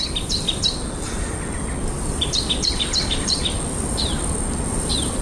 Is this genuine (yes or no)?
yes